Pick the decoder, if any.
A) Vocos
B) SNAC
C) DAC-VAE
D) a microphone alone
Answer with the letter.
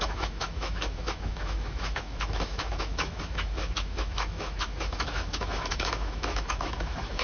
C